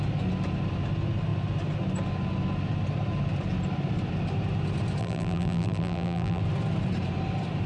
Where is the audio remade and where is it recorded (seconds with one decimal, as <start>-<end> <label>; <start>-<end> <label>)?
0.0-5.0 recorded; 5.0-6.4 remade; 6.4-7.7 recorded